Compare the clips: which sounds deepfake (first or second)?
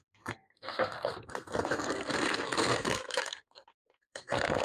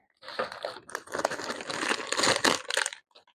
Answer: first